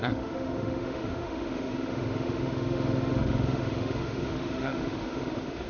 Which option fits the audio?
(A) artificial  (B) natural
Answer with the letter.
A